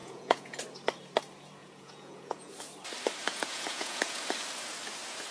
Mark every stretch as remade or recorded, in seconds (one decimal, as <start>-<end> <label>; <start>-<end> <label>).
0.0-0.6 remade; 0.6-1.6 recorded; 1.6-2.5 remade; 2.5-3.3 recorded; 3.3-4.2 remade; 4.2-5.3 recorded